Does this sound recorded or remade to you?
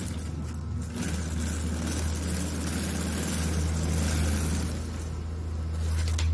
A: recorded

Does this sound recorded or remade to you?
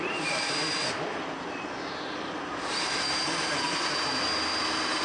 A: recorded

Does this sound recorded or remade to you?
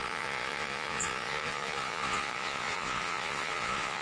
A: remade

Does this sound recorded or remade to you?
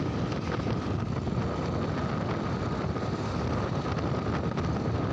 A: recorded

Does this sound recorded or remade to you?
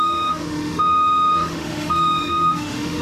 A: remade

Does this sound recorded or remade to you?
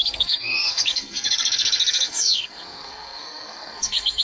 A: remade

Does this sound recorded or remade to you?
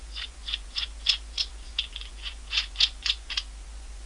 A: remade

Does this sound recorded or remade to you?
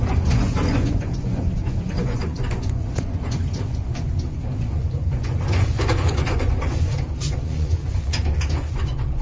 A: remade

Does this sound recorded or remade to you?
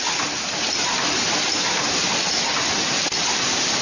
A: recorded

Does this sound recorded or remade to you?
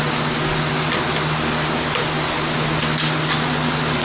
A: recorded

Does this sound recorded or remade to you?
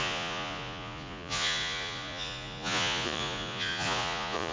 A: remade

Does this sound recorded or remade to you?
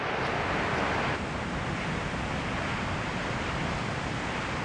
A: recorded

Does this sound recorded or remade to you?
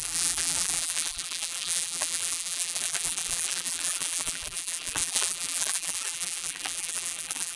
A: remade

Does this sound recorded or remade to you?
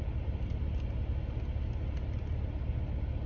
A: recorded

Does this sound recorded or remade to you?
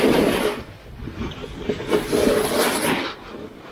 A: recorded